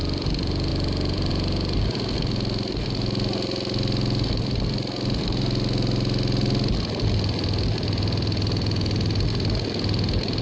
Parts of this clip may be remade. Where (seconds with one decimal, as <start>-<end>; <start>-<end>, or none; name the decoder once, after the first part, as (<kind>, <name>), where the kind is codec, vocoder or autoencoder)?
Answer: 0.7-1.3 (vocoder, BigVGAN v2)